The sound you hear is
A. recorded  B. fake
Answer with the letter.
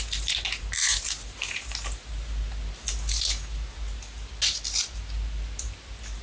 A